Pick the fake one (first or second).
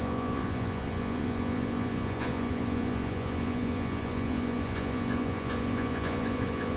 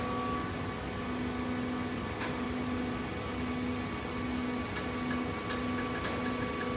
first